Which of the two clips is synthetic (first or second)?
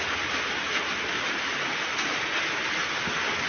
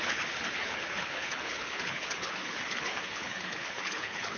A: second